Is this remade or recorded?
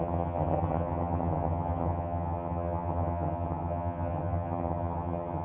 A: remade